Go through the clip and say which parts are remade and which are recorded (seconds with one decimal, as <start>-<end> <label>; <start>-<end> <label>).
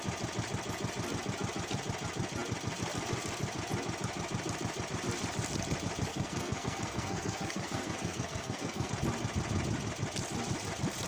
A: 0.0-6.1 recorded; 6.1-8.9 remade; 8.9-11.1 recorded